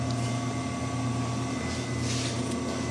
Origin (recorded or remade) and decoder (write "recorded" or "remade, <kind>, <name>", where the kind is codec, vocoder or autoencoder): recorded